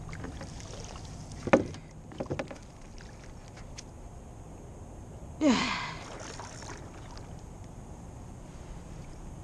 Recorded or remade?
recorded